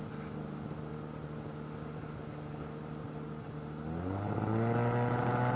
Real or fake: real